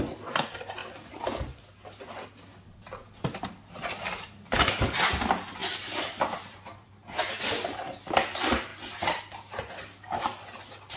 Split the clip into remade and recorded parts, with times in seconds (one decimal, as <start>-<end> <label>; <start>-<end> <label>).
0.0-11.0 recorded